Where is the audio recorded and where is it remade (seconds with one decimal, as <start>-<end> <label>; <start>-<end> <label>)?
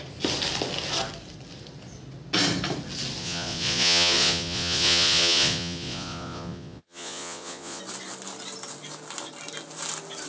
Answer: 0.0-3.2 recorded; 3.2-7.8 remade; 7.8-10.3 recorded